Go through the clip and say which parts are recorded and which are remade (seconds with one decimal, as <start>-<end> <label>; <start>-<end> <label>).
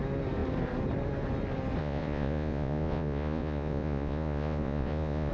0.0-1.8 recorded; 1.8-5.3 remade